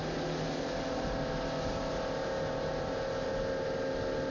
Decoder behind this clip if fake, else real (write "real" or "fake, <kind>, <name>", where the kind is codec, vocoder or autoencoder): real